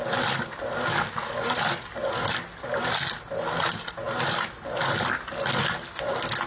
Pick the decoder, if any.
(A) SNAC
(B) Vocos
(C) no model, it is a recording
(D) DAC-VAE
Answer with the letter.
C